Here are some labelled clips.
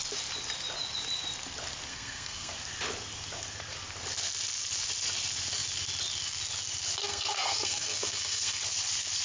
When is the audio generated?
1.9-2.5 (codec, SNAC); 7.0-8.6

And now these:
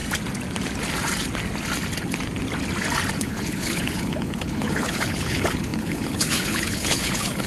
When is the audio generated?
3.2-7.5 (codec, HILCodec)

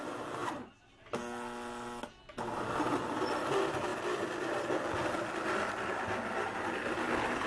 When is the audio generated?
none

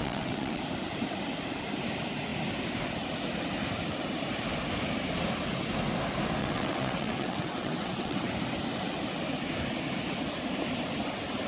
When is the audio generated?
0.0-0.6 (vocoder, WaveNeXt); 6.4-8.3

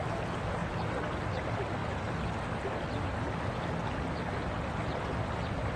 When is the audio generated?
0.6-1.2 (vocoder, BigVGAN v2)

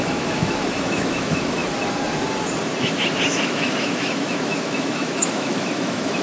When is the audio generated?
0.0-1.6 (autoencoder, DAC-VAE); 3.3-6.2